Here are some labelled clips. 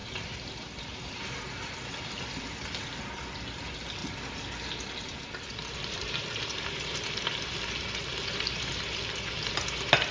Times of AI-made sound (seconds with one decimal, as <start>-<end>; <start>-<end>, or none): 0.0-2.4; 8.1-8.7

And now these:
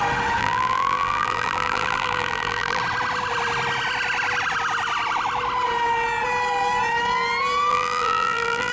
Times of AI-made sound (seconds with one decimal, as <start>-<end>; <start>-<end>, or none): 0.4-2.8; 7.7-8.7

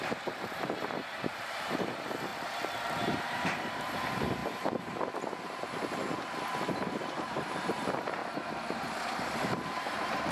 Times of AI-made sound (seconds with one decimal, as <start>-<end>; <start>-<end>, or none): 0.0-2.3; 3.2-4.4; 5.4-6.0; 6.7-8.2; 8.8-10.3

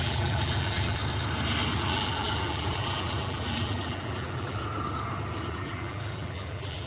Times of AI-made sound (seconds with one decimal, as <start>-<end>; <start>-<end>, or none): 0.0-1.0; 1.7-4.6; 5.5-6.9